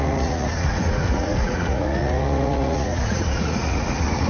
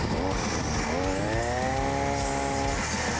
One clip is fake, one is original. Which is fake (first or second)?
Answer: first